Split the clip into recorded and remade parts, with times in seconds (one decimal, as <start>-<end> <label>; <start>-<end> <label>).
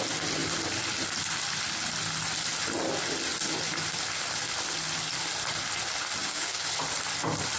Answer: 0.0-6.2 recorded; 6.2-6.7 remade; 6.7-7.6 recorded